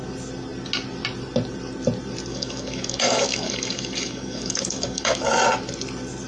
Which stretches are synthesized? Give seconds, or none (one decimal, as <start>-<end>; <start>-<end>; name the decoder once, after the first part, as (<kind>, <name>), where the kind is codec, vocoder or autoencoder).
2.3-5.3 (codec, DAC)